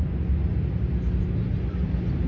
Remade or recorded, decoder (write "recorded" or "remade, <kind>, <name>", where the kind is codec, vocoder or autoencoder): recorded